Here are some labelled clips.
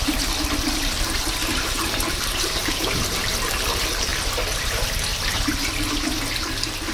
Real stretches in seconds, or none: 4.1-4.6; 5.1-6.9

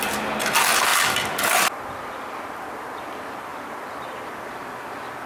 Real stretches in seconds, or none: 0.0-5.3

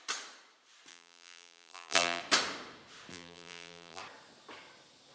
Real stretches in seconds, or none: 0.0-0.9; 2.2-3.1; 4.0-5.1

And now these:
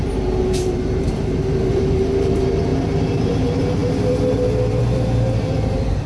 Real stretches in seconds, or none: none

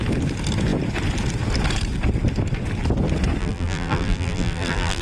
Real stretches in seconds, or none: 0.0-3.4